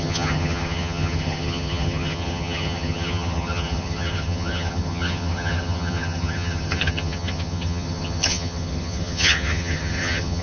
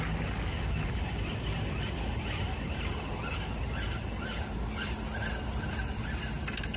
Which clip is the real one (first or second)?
second